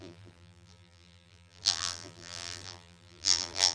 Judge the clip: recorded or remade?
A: remade